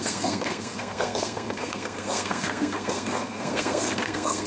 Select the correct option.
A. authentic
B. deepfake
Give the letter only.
B